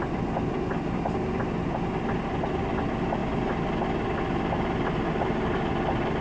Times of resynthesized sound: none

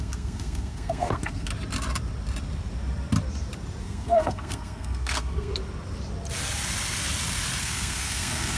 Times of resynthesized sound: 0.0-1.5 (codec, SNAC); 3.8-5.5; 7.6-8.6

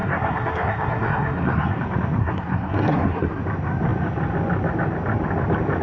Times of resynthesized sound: 0.0-1.8 (codec, SNAC); 2.2-3.4

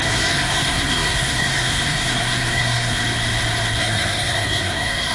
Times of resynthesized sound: 0.0-3.0 (codec, SNAC); 3.8-5.1

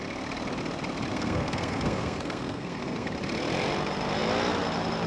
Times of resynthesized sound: 1.1-3.1 (codec, SNAC)

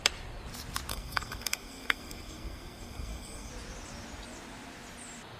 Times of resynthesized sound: 0.9-3.5 (codec, SNAC)

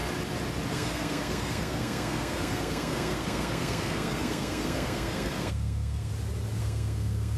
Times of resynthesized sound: 0.7-6.1 (codec, SNAC); 6.6-7.4

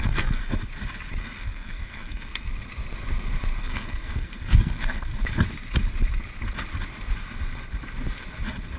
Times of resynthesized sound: 0.0-0.4 (codec, SNAC); 1.2-2.5; 3.6-5.1